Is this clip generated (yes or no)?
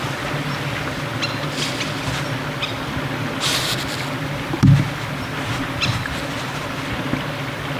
no